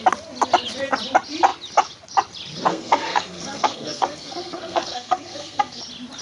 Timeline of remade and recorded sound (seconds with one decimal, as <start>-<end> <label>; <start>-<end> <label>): 0.0-2.7 recorded; 2.7-5.8 remade; 5.8-6.2 recorded